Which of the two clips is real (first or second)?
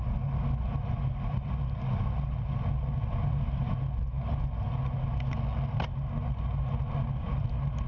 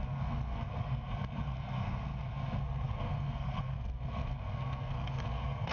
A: first